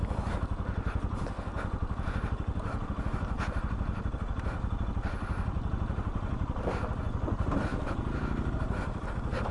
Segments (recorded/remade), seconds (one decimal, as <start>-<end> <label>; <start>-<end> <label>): 0.0-2.5 recorded; 2.5-7.0 remade; 7.0-9.5 recorded